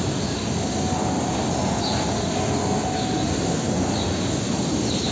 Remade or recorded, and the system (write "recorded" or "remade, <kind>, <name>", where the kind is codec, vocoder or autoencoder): recorded